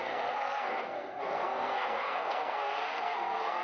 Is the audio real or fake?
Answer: fake